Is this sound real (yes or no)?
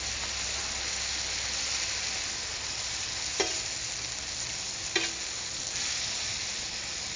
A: yes